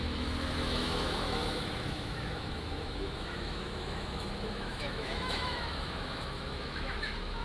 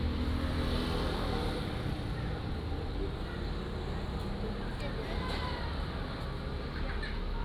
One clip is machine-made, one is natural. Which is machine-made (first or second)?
first